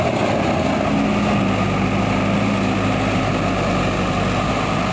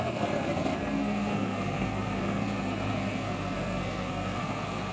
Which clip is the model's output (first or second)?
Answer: second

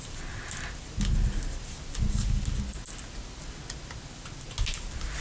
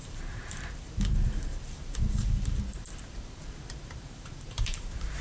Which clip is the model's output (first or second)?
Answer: second